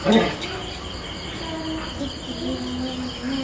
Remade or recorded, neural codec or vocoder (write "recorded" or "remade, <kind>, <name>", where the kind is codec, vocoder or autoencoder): recorded